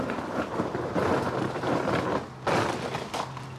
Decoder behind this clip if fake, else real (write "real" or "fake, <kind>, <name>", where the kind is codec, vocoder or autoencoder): real